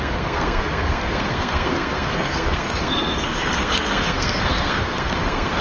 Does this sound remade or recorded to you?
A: remade